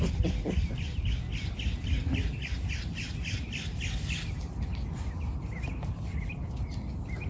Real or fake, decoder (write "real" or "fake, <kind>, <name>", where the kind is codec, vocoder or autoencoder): real